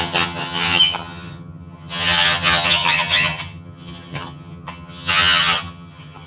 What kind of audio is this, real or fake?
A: fake